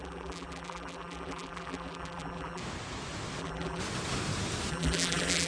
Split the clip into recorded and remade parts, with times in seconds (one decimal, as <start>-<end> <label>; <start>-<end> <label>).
0.0-2.6 remade; 2.6-3.4 recorded; 3.4-3.8 remade; 3.8-4.7 recorded; 4.7-5.5 remade